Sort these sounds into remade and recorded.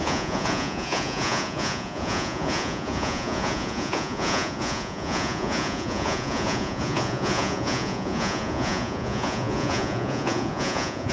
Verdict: remade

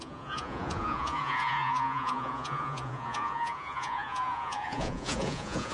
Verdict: remade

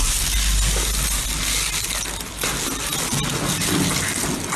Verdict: recorded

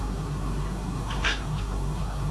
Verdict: remade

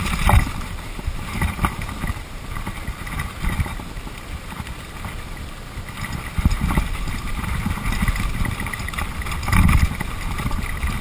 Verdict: recorded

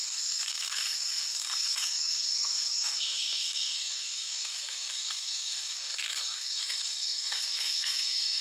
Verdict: remade